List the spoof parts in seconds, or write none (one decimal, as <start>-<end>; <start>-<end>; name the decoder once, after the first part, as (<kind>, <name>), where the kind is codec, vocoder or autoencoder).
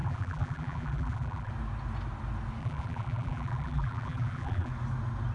0.0-1.5 (vocoder, BigVGAN v2); 2.6-4.7